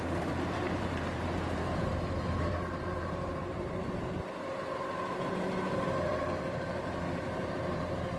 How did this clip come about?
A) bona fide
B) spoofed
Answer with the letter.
B